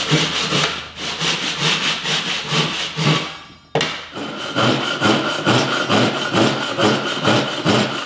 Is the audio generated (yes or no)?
no